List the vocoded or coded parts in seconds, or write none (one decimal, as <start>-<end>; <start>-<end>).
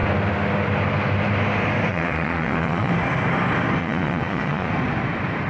1.9-2.9; 3.8-4.7